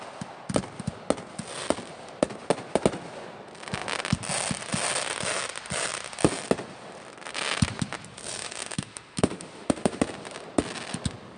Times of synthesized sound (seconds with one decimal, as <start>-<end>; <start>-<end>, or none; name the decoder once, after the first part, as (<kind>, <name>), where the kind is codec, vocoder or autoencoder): 8.4-10.0 (autoencoder, DAC-VAE)